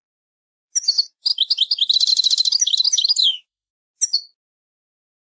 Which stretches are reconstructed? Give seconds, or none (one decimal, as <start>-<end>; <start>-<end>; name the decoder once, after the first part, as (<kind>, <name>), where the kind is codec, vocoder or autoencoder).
3.2-3.7 (autoencoder, DAC-VAE)